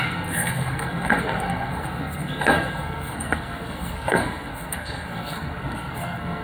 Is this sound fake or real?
fake